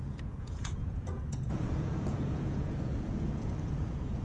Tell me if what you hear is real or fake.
fake